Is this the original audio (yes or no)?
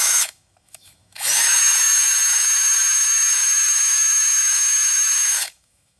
no